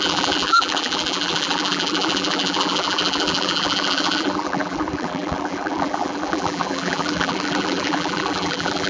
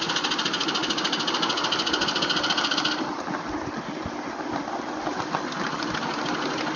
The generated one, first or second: first